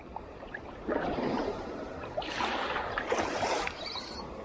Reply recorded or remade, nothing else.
remade